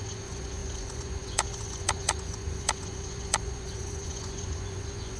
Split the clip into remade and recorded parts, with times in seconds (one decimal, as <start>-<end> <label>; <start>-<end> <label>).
0.0-5.2 remade

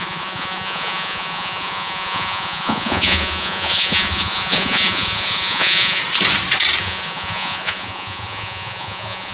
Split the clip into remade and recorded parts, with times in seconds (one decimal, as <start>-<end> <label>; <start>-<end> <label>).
0.0-6.0 remade; 6.0-6.8 recorded; 6.8-9.3 remade

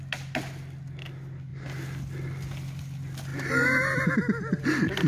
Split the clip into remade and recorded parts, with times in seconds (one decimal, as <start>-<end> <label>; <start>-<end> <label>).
0.0-5.1 recorded

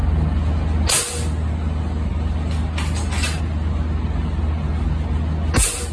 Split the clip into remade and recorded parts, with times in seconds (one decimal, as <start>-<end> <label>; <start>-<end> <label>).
0.0-5.9 recorded